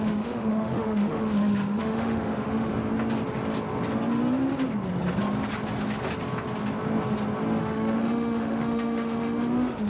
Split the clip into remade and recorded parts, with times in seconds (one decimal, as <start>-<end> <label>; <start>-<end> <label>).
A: 0.0-2.7 remade; 2.7-7.6 recorded; 7.6-9.9 remade